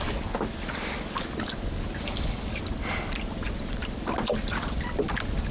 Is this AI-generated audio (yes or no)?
no